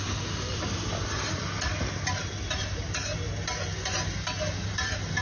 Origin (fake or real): real